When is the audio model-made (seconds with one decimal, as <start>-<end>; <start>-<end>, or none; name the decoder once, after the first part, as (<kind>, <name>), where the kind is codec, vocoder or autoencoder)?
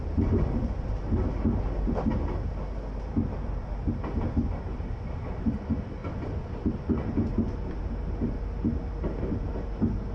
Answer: none